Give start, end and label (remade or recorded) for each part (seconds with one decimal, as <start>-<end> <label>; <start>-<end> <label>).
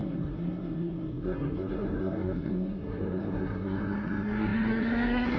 0.0-5.4 remade